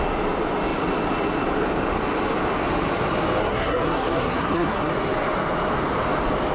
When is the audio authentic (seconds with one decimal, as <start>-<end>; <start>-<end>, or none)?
0.0-3.4; 4.9-6.5